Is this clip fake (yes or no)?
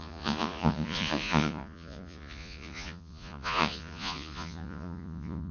yes